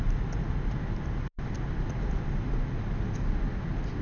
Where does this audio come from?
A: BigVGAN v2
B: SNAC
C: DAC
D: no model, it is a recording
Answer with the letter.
D